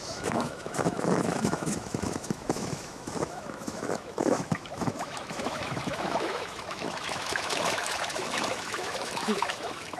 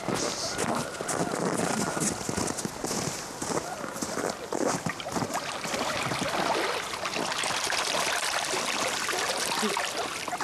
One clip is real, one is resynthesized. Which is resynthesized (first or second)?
first